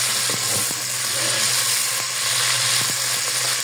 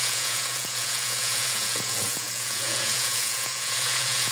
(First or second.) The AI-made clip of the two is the second